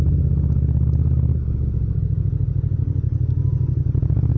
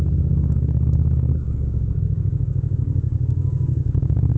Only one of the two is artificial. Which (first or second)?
second